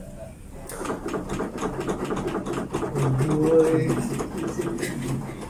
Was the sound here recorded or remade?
recorded